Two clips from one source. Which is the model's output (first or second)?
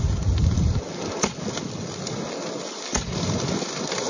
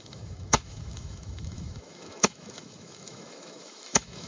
second